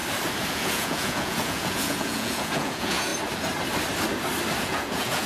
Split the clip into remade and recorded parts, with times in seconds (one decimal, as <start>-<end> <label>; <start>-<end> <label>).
0.0-0.5 recorded; 0.5-3.1 remade; 3.1-4.6 recorded; 4.6-5.3 remade